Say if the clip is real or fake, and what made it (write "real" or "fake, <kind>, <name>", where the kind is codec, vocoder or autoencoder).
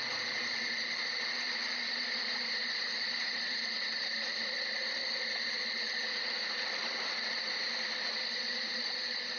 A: real